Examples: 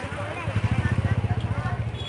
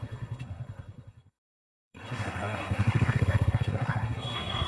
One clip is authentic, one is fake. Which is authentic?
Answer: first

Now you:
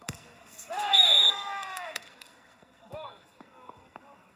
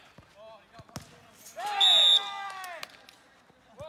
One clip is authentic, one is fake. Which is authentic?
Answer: second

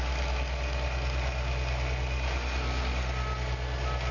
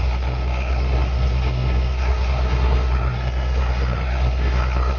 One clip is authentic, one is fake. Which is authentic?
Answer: first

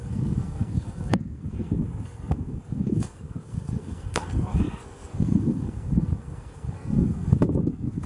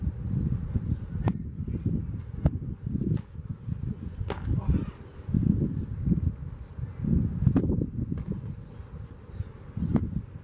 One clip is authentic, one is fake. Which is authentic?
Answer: second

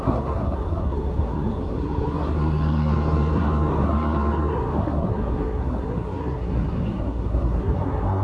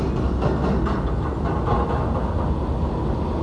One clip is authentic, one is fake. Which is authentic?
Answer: second